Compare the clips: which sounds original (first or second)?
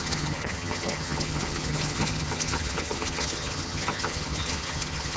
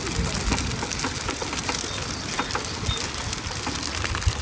second